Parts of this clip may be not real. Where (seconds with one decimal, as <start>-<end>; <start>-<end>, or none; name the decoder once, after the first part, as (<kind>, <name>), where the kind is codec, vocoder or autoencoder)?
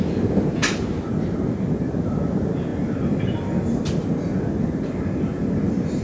none